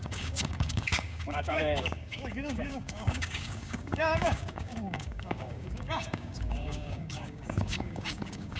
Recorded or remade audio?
remade